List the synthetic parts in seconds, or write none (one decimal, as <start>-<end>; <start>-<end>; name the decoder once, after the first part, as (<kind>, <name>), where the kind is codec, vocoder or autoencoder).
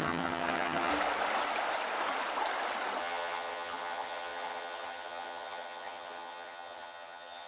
0.0-0.9 (vocoder, HiFi-GAN); 3.0-7.5